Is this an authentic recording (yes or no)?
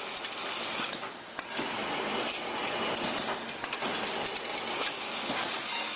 yes